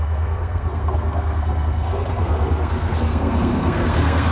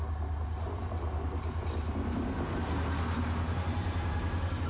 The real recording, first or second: second